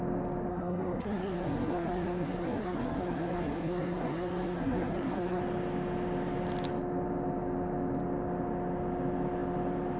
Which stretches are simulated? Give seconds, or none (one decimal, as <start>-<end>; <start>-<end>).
0.5-5.4